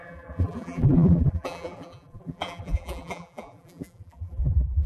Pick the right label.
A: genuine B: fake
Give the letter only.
B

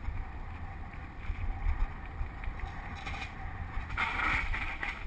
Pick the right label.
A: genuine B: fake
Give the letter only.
B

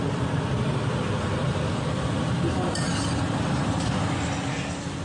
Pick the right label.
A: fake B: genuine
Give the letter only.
A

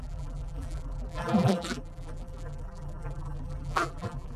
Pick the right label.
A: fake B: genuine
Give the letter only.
A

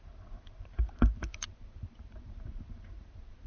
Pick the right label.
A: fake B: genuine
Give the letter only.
A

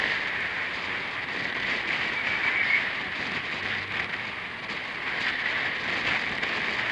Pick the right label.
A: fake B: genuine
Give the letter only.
B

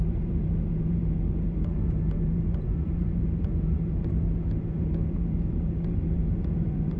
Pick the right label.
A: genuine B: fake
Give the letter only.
B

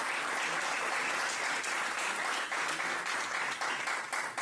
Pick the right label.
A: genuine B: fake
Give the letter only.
A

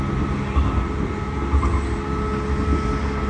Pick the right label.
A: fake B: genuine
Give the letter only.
B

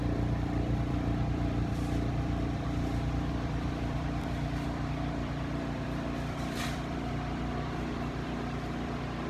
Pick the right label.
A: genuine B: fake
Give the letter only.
B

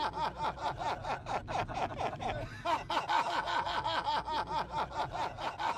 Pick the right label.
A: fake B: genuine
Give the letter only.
B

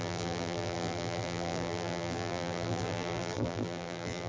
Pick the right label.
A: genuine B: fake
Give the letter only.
B